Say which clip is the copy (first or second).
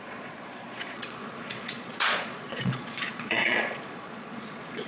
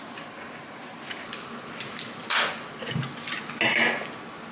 first